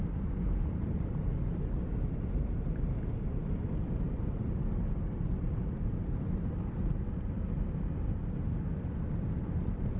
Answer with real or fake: real